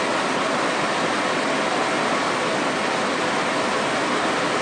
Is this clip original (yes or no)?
yes